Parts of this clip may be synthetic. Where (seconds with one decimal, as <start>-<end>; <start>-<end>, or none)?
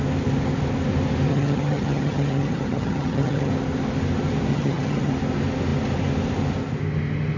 1.3-3.5; 4.5-5.1